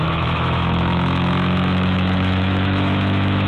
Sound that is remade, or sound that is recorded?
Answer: remade